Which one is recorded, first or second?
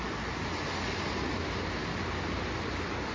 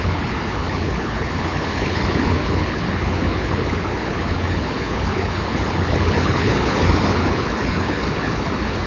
first